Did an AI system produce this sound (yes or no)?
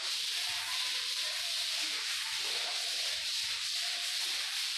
yes